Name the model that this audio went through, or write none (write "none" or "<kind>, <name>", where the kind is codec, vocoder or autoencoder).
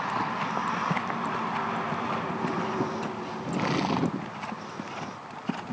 none